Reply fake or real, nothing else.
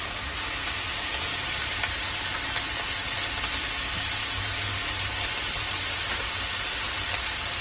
real